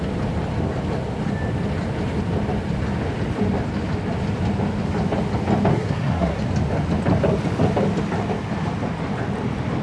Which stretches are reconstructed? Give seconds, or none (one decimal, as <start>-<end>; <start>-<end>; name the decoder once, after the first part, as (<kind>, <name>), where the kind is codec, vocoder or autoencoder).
5.7-6.4 (codec, SNAC)